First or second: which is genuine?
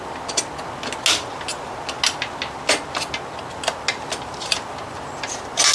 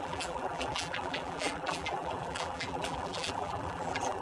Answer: first